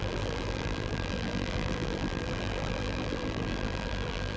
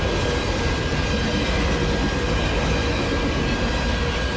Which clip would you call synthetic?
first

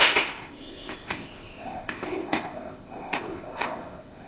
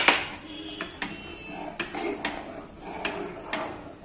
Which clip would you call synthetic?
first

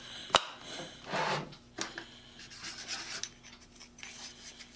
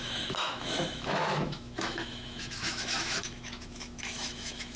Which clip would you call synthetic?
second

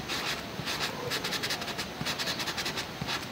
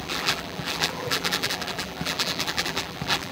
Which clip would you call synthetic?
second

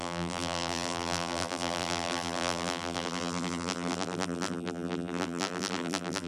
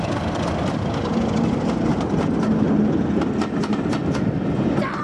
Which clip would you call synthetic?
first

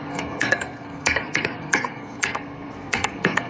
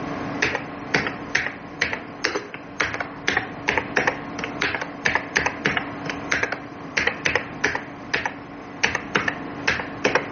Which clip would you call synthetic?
first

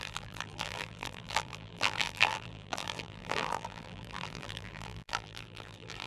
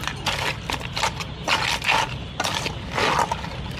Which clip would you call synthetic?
first